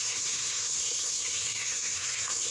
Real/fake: fake